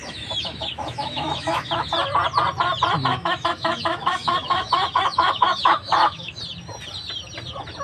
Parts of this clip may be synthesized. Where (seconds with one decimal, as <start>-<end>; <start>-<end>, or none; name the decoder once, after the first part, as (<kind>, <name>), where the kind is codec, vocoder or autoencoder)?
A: 0.0-1.9 (autoencoder, DAC-VAE); 3.1-6.4